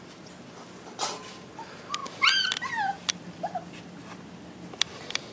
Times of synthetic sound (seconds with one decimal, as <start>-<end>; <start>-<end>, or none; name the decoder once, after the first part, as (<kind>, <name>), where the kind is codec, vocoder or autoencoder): none